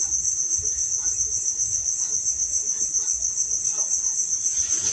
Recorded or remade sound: remade